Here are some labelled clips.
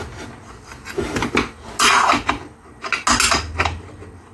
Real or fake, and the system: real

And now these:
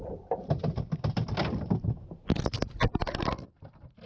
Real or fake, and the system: real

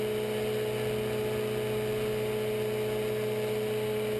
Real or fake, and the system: real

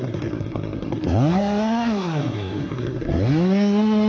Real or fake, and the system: fake, codec, SNAC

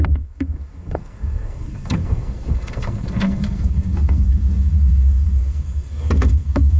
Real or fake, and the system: fake, codec, SNAC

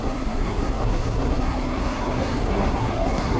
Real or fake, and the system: fake, codec, SNAC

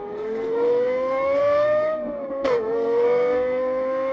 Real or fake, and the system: fake, codec, SNAC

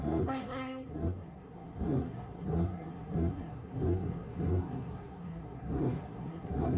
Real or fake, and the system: fake, codec, SNAC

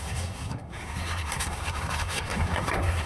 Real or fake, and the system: fake, codec, SNAC